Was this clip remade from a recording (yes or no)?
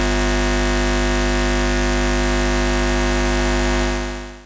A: no